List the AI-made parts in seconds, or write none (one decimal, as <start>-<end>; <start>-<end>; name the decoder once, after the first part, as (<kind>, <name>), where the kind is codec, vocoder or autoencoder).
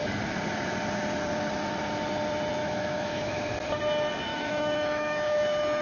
2.6-3.4 (autoencoder, DAC-VAE); 4.3-5.8